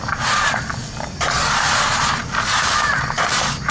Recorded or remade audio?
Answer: recorded